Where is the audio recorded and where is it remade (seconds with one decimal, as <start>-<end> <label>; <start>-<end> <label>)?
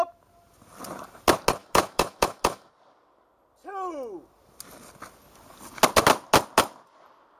0.0-1.6 recorded; 1.6-2.7 remade; 2.7-7.4 recorded